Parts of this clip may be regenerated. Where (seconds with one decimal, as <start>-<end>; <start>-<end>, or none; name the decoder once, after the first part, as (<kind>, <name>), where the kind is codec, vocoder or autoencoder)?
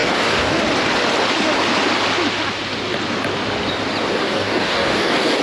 0.0-0.5 (codec, DAC); 4.2-5.4